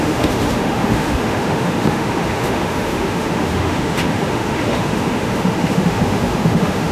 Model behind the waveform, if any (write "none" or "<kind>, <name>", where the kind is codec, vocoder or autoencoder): autoencoder, DAC-VAE